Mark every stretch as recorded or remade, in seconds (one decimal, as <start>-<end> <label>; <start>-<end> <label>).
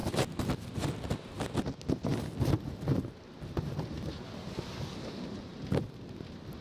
0.0-6.6 recorded